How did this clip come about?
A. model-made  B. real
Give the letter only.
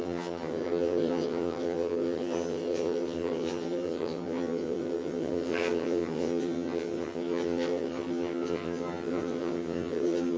A